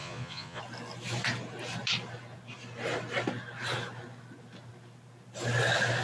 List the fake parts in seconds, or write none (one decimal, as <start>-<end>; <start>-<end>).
0.0-0.6